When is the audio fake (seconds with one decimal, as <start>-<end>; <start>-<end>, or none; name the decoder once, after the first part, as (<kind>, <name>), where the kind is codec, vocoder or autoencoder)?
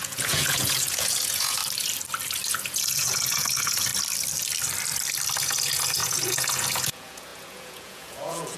0.0-1.6 (vocoder, Vocos); 2.5-3.9; 5.4-8.6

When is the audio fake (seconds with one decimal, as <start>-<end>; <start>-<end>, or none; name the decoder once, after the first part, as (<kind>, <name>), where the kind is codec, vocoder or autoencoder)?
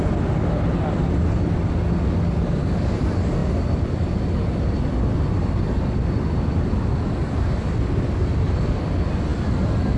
none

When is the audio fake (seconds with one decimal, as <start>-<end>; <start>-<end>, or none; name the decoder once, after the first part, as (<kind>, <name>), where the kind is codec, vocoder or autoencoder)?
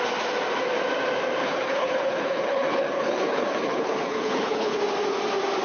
1.4-4.8 (codec, HILCodec)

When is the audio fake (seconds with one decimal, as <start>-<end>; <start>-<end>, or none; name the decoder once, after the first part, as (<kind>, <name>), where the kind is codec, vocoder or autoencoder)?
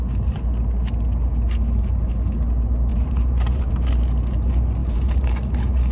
2.9-3.9 (vocoder, BigVGAN v2); 4.8-5.9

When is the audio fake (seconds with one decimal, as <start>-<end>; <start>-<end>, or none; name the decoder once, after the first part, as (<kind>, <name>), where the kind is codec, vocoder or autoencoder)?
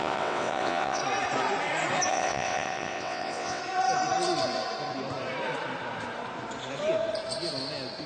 0.0-1.0 (vocoder, WaveNeXt); 2.1-3.6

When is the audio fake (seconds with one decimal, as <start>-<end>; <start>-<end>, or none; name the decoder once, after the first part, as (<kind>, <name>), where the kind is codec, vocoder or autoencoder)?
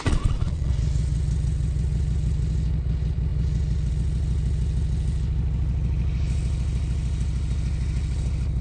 0.0-0.7 (vocoder, Vocos)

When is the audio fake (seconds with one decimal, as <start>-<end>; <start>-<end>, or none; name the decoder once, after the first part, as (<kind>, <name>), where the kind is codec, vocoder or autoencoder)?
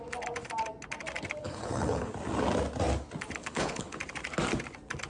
1.4-2.1 (codec, HILCodec); 3.4-4.0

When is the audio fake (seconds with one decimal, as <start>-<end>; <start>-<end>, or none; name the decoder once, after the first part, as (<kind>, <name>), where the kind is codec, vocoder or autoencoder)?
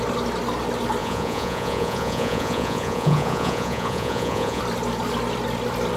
1.0-4.6 (vocoder, Vocos)